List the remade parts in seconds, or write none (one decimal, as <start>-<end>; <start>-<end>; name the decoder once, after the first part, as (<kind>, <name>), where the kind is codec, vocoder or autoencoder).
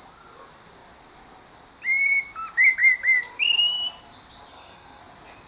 4.5-5.0 (codec, SNAC)